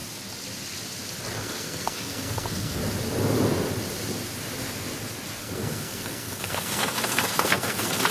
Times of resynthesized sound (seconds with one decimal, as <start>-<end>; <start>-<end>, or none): 1.3-2.8; 5.4-8.1